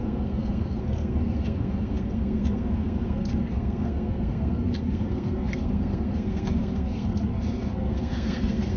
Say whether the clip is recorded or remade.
remade